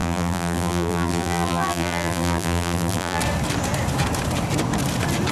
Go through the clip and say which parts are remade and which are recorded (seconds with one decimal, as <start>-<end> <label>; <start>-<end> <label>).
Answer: 0.0-3.2 remade; 3.2-5.3 recorded